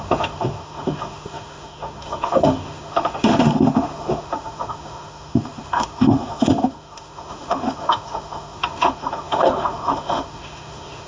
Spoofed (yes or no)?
yes